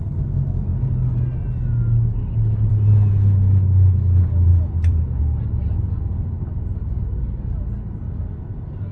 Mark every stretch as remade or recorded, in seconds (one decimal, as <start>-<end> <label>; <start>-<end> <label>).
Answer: 0.0-4.5 recorded; 4.5-5.2 remade; 5.2-8.9 recorded